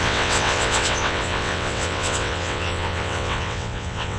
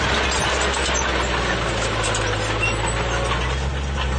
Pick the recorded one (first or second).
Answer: second